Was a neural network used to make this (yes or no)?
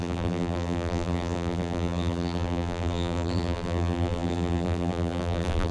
yes